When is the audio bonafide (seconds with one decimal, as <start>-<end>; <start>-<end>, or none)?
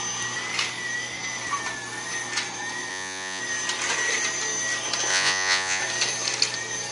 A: 0.0-2.9; 3.4-5.1; 5.8-6.9